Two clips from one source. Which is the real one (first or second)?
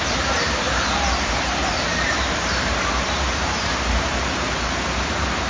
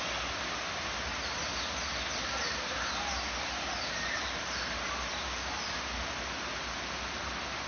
second